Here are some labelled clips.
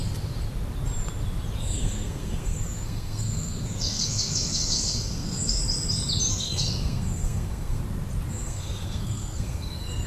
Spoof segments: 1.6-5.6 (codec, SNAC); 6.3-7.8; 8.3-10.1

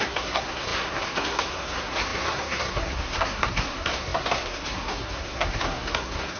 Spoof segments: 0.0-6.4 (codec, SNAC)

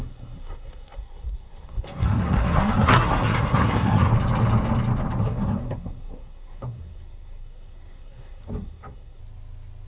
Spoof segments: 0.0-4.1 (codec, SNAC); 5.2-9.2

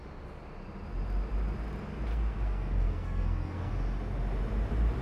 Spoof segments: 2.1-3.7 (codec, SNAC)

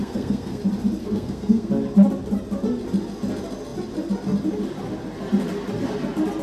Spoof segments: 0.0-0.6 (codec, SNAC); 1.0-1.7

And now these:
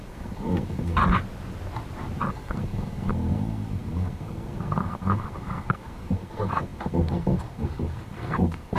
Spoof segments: 0.0-1.0 (codec, SNAC); 2.3-8.8

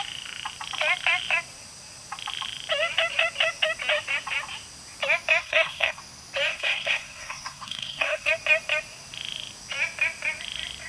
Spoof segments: 5.4-6.0 (codec, SNAC); 6.5-8.3